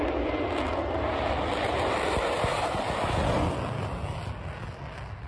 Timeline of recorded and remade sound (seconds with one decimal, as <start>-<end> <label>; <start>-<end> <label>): 0.0-5.3 recorded